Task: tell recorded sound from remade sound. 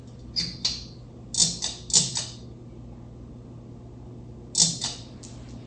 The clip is recorded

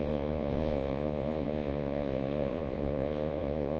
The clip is remade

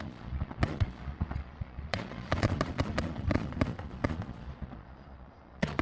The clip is remade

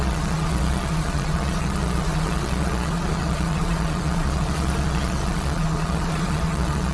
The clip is remade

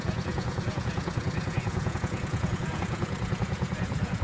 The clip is remade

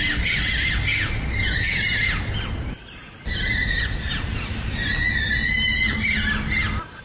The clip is recorded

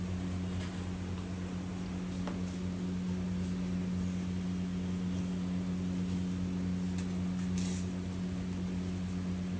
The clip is recorded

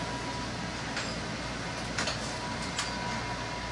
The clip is recorded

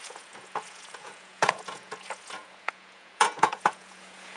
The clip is remade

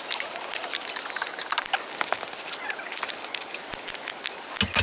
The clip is recorded